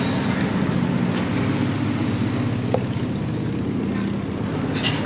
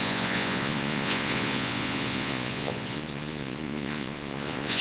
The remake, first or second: second